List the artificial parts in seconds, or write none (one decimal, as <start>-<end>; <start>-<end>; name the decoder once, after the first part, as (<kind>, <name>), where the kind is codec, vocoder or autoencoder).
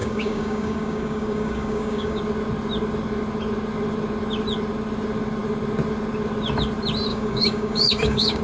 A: 0.0-2.2 (codec, DAC); 7.1-8.4